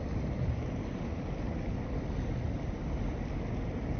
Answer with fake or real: real